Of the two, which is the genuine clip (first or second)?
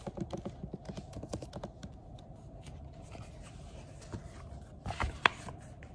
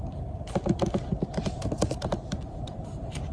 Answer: first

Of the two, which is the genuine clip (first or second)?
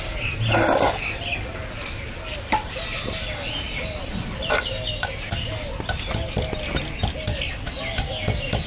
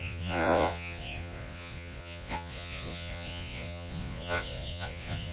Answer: first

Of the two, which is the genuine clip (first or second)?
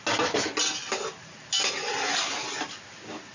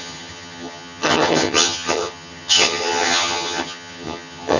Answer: first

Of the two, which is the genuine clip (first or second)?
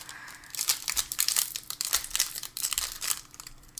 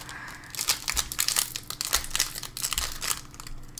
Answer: second